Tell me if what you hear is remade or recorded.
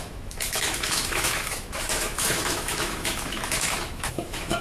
remade